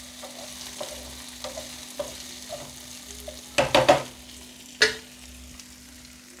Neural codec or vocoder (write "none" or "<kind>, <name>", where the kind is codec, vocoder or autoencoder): none